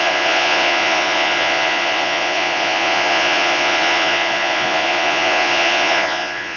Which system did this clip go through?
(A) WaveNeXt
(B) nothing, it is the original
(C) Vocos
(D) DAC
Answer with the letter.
C